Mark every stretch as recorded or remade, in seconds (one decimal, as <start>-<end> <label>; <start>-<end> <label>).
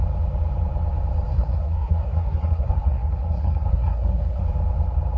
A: 0.0-1.3 recorded; 1.3-4.4 remade; 4.4-5.2 recorded